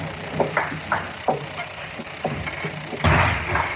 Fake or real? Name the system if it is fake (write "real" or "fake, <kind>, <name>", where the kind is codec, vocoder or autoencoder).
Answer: real